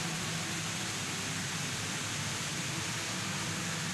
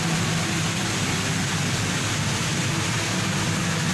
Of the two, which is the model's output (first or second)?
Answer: first